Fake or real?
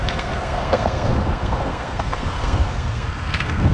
fake